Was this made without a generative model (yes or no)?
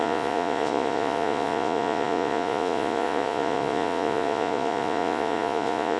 no